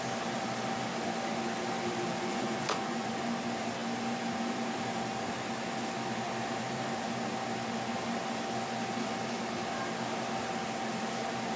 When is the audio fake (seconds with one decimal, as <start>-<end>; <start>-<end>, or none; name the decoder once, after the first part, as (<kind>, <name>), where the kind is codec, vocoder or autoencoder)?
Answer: 2.1-3.1 (vocoder, Vocos)